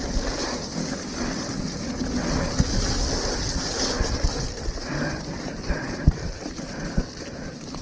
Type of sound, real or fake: real